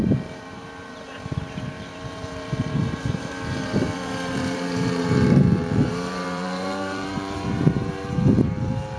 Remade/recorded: remade